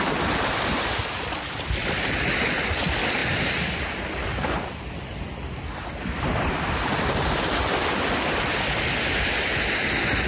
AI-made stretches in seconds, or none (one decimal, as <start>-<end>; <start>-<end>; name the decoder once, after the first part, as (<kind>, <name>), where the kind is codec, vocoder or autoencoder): none